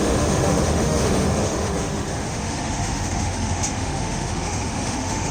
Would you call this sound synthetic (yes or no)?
yes